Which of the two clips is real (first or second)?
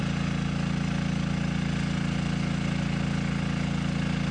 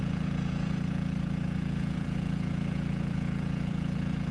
first